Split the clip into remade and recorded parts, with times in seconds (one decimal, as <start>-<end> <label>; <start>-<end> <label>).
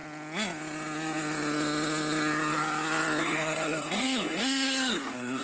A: 0.0-3.2 recorded; 3.2-5.4 remade